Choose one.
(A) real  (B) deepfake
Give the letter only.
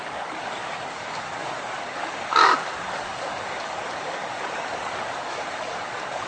B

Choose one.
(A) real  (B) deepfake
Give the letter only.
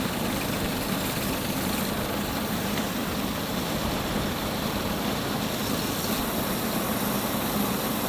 B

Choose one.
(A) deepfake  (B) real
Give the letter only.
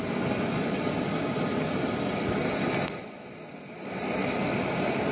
B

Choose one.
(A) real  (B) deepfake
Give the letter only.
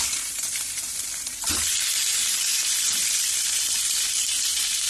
B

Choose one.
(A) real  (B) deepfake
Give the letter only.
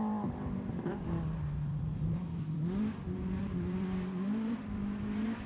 B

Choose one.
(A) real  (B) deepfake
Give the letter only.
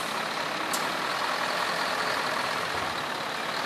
A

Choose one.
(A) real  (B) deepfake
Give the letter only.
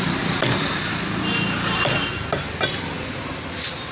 A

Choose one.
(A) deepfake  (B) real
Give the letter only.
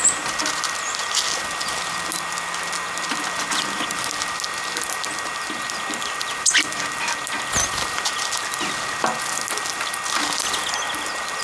B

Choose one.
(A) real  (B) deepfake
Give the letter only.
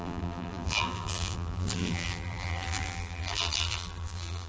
B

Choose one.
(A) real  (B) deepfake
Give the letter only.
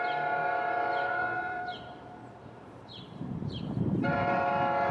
B